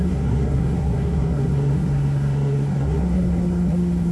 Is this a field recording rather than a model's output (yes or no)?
no